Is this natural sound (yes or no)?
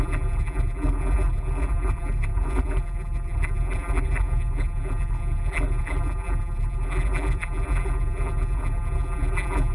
no